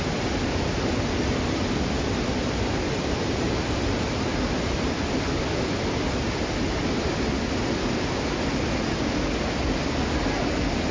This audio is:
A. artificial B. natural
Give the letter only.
B